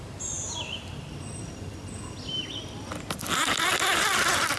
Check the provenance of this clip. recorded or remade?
recorded